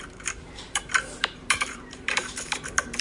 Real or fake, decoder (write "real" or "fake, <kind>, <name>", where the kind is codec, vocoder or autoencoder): fake, vocoder, BigVGAN v2